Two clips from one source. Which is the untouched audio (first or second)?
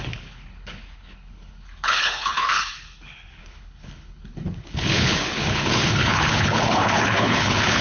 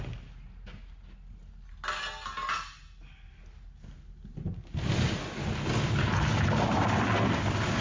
second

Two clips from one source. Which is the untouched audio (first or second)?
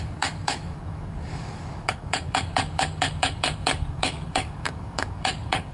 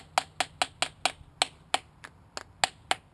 second